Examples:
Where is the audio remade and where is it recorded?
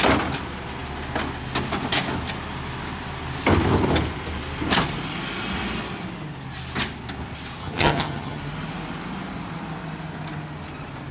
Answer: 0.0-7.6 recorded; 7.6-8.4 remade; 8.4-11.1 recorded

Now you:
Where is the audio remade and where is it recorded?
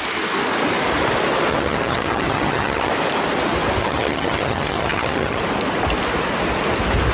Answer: 0.0-1.5 recorded; 1.5-2.9 remade; 2.9-3.8 recorded; 3.8-5.4 remade; 5.4-7.1 recorded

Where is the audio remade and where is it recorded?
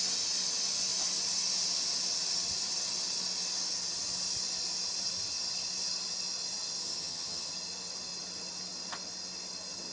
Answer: 0.0-6.8 recorded; 6.8-7.5 remade; 7.5-9.9 recorded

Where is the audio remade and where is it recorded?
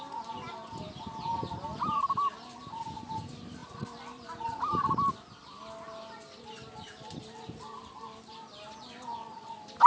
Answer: 0.0-9.9 recorded